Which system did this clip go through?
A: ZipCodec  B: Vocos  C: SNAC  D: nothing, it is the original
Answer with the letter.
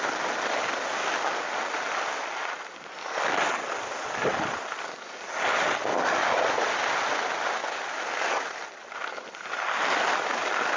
D